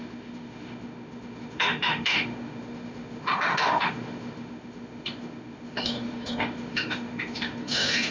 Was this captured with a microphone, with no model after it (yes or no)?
no